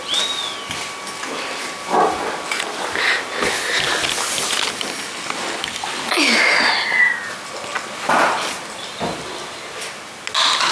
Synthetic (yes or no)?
no